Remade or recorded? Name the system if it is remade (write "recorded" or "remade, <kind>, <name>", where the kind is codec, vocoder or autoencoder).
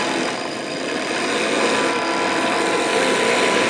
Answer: recorded